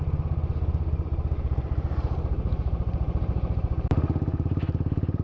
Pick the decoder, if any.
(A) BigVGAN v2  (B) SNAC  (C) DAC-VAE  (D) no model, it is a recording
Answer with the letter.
A